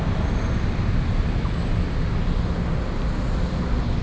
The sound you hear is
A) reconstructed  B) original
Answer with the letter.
B